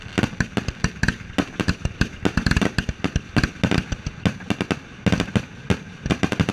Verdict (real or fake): real